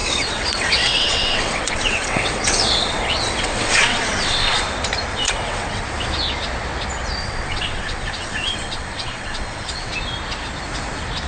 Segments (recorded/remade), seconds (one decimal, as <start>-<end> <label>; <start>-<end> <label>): 0.0-4.6 remade; 4.6-5.1 recorded; 5.1-5.8 remade; 5.8-7.2 recorded; 7.2-9.9 remade; 9.9-11.3 recorded